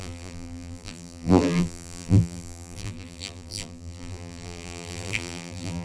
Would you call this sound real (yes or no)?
no